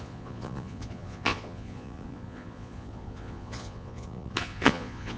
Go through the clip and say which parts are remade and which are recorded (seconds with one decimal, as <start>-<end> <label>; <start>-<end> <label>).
0.0-5.2 remade